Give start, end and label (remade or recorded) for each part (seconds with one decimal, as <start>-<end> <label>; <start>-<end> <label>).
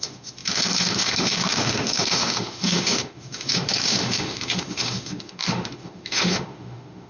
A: 0.0-7.1 remade